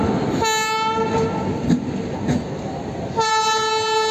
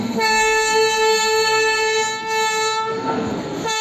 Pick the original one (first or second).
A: first